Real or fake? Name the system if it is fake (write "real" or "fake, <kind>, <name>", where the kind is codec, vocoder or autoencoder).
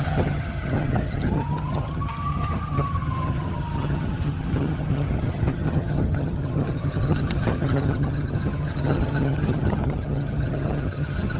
fake, vocoder, HiFi-GAN